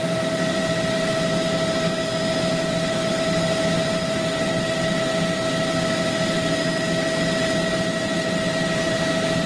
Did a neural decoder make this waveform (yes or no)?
no